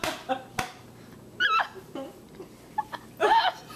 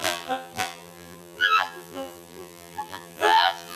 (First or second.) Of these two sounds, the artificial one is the second